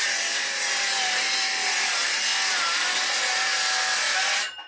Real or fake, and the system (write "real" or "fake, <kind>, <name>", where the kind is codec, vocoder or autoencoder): real